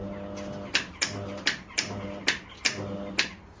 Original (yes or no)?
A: yes